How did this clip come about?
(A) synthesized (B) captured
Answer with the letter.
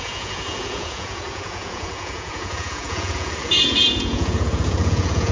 A